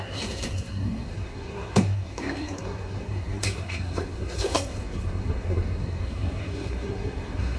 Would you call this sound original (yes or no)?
no